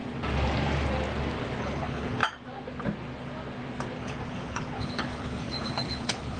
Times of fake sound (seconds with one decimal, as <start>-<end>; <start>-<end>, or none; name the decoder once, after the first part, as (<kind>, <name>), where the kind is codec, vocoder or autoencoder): 1.6-2.2 (codec, HILCodec); 4.0-6.4